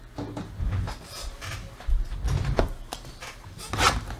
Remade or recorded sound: recorded